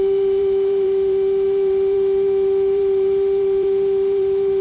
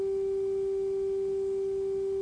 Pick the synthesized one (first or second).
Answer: first